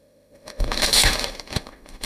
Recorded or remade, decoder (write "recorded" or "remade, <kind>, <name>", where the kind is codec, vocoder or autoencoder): remade, autoencoder, DAC-VAE